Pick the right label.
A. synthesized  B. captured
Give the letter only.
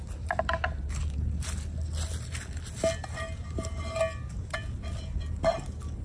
B